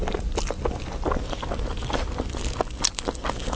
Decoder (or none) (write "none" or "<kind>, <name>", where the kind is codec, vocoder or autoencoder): none